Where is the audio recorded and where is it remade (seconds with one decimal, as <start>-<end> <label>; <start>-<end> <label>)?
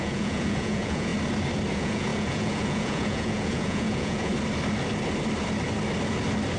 0.0-1.1 remade; 1.1-1.7 recorded; 1.7-4.3 remade; 4.3-6.6 recorded